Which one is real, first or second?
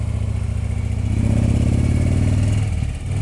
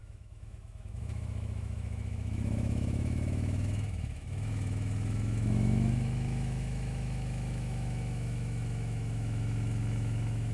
first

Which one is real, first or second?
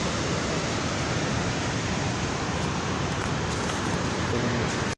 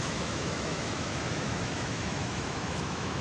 first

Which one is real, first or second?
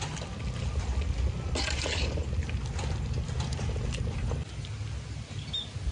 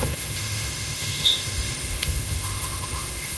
first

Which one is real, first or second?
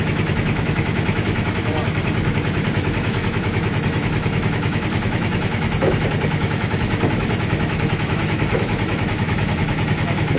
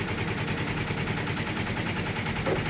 second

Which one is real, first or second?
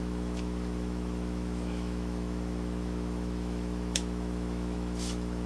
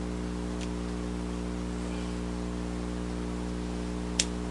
second